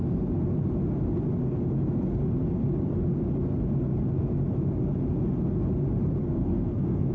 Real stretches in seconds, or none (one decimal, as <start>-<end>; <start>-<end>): 0.0-6.2